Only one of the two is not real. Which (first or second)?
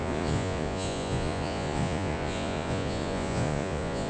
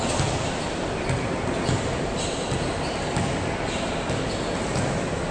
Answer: first